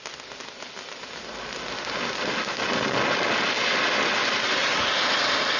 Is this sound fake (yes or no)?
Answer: no